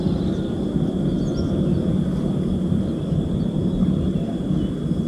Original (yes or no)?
yes